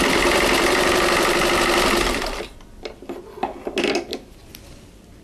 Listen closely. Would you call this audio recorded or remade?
remade